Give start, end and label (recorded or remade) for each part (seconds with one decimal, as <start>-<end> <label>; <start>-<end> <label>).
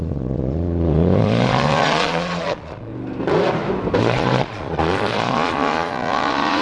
0.0-2.9 remade; 2.9-4.0 recorded; 4.0-6.6 remade